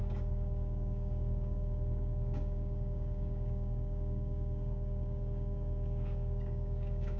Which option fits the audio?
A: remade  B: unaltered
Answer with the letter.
A